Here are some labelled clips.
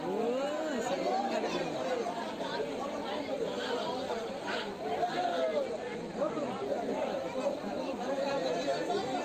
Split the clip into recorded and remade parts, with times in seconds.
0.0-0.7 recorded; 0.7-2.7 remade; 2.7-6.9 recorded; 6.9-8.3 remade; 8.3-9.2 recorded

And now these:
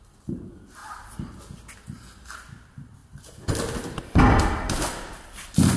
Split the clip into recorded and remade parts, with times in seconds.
0.0-0.8 recorded; 0.8-1.4 remade; 1.4-3.0 recorded; 3.0-5.1 remade; 5.1-5.8 recorded

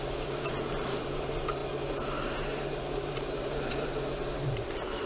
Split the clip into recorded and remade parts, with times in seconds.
0.0-1.6 remade; 1.6-2.7 recorded; 2.7-5.1 remade

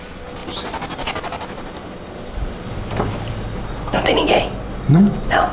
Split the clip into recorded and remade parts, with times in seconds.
0.0-0.4 recorded; 0.4-3.7 remade; 3.7-5.5 recorded

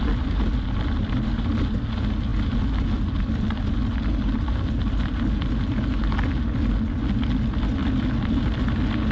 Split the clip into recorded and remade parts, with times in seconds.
0.0-9.1 recorded

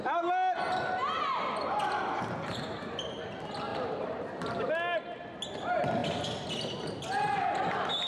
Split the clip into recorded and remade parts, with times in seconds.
0.0-3.7 recorded; 3.7-4.7 remade; 4.7-8.1 recorded